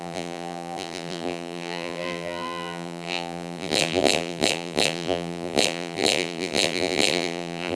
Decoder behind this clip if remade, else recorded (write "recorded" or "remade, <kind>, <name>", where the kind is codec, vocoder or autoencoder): remade, vocoder, BigVGAN v2